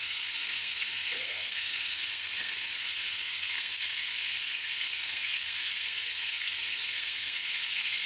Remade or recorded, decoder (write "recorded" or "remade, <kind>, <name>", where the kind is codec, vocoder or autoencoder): remade, codec, SNAC